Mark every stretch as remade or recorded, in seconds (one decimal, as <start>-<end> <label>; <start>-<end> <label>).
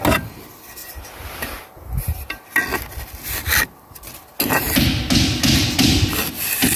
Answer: 0.0-6.8 recorded